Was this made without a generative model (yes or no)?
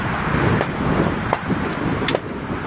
yes